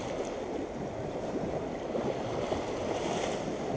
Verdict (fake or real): real